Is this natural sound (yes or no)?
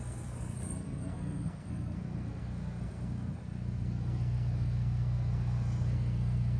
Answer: no